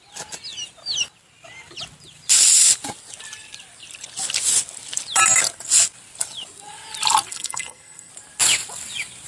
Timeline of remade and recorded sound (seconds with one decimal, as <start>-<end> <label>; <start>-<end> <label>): 0.0-7.3 recorded; 7.3-8.1 remade; 8.1-9.3 recorded